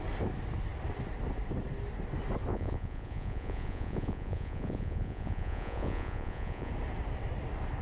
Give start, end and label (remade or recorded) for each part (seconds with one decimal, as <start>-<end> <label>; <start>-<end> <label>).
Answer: 0.0-2.5 recorded; 2.5-6.7 remade; 6.7-7.8 recorded